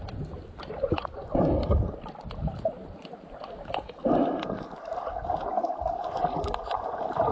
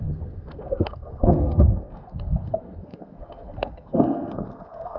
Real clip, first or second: first